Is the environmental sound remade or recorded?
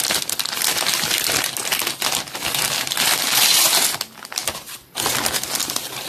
recorded